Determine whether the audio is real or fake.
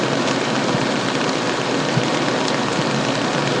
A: real